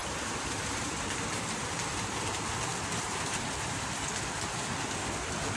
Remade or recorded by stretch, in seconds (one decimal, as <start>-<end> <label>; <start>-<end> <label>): 0.0-2.7 recorded; 2.7-5.6 remade